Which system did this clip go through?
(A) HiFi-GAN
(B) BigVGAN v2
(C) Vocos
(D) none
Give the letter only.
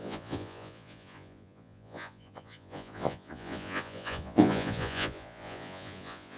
C